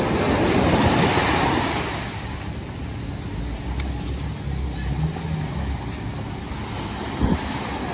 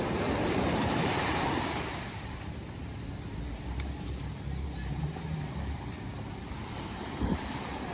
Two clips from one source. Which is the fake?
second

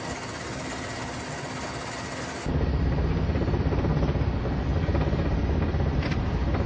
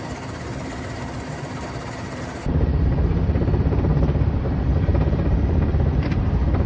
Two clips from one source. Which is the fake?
second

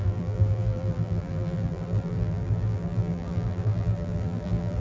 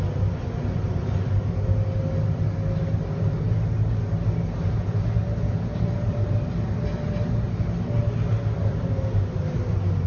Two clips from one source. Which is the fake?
first